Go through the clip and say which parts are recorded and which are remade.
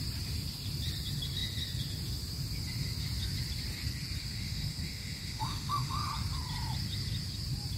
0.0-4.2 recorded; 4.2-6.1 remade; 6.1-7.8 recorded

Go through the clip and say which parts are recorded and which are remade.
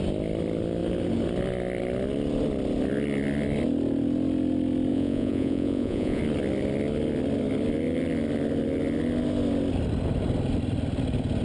0.0-4.9 recorded; 4.9-6.2 remade; 6.2-11.4 recorded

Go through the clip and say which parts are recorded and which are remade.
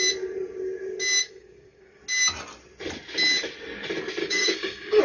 0.0-1.2 recorded; 1.2-2.0 remade; 2.0-4.2 recorded; 4.2-5.0 remade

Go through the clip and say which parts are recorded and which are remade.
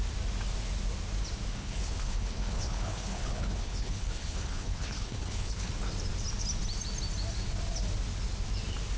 0.0-1.5 recorded; 1.5-5.7 remade; 5.7-9.0 recorded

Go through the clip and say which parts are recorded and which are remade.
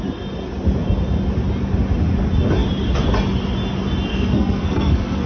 0.0-4.1 recorded; 4.1-5.3 remade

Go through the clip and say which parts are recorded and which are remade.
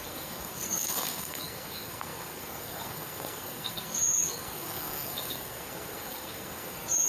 0.0-7.1 remade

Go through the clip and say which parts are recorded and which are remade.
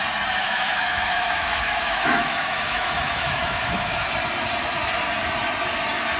0.0-0.4 recorded; 0.4-4.1 remade; 4.1-6.2 recorded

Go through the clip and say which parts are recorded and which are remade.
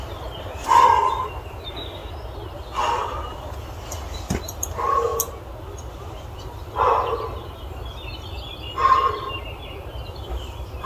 0.0-2.0 remade; 2.0-3.4 recorded; 3.4-5.1 remade; 5.1-6.4 recorded; 6.4-10.9 remade